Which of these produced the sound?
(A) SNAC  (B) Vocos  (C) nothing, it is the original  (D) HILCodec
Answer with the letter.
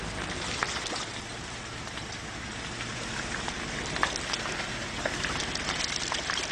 C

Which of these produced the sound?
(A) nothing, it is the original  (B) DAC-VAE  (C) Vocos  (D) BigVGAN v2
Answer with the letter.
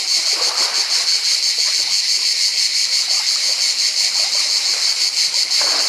A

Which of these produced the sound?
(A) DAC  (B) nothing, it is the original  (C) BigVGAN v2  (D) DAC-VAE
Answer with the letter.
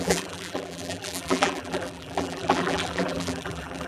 C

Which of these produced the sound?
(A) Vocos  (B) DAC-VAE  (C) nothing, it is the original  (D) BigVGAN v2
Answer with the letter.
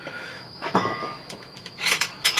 B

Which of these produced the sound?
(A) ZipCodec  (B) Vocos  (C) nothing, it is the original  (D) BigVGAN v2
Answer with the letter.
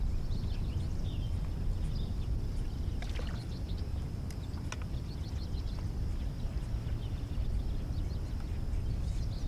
C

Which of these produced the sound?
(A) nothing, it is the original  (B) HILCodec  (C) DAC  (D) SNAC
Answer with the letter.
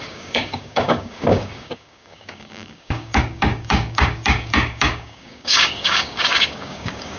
C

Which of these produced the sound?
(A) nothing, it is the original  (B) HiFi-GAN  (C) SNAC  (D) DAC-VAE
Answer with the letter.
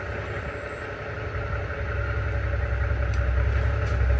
A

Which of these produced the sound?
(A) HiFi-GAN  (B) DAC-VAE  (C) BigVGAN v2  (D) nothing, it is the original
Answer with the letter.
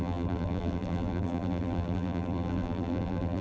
C